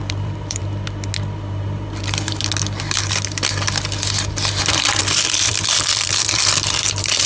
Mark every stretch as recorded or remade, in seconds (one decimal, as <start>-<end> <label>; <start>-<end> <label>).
0.0-0.6 remade; 0.6-5.0 recorded; 5.0-7.3 remade